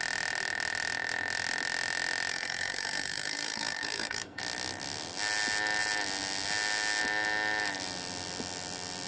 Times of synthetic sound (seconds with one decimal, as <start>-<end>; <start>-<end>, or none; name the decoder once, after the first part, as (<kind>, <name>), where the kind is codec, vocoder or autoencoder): 2.3-4.4 (codec, SNAC)